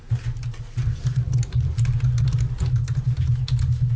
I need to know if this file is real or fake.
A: real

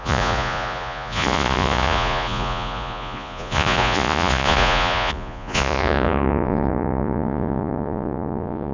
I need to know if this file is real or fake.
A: fake